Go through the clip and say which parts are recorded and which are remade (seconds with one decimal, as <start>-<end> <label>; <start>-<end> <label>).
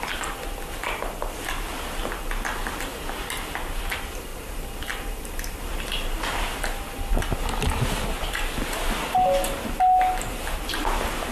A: 0.0-11.3 recorded